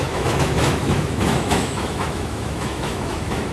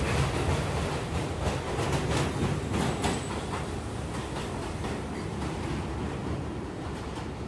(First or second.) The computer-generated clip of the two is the first